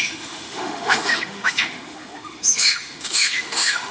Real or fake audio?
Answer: fake